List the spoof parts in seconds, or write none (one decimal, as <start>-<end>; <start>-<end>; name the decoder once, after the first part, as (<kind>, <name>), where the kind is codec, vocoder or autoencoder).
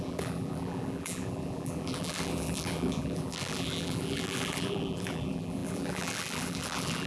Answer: 0.0-7.1 (vocoder, BigVGAN v2)